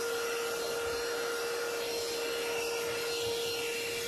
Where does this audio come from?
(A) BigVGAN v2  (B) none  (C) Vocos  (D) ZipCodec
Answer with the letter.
B